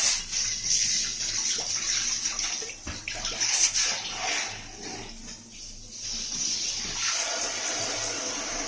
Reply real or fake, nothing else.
real